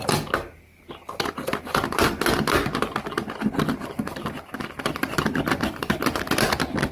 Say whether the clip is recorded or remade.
recorded